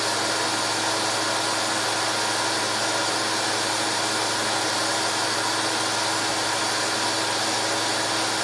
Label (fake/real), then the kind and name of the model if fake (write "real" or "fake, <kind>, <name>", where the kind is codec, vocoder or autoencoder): real